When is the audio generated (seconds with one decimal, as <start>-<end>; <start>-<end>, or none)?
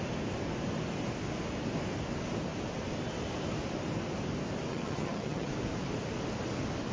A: 4.7-5.5